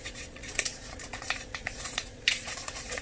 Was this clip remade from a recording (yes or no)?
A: yes